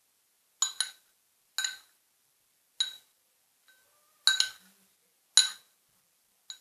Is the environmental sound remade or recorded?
recorded